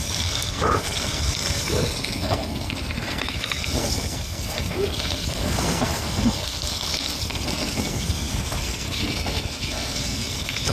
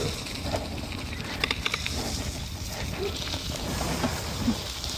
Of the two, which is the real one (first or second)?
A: second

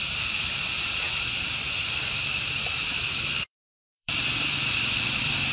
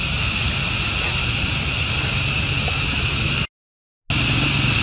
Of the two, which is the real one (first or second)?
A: second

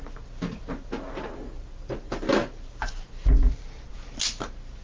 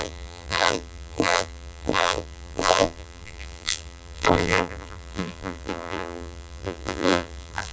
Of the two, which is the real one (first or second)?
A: first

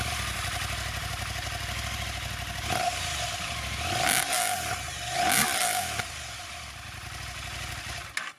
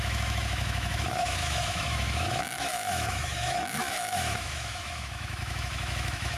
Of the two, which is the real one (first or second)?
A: first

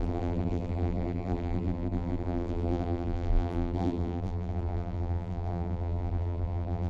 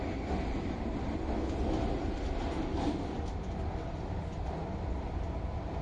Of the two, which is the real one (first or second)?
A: second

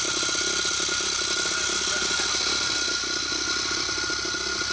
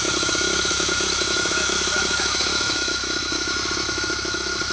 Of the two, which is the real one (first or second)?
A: first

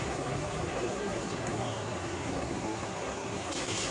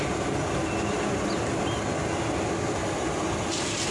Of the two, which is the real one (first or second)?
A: second